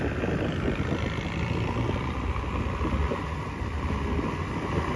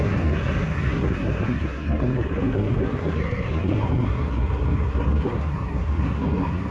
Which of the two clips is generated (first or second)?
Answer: second